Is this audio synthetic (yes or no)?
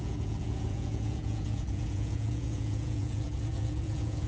yes